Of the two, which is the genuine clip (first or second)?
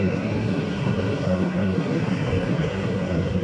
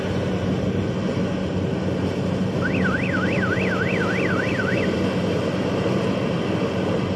second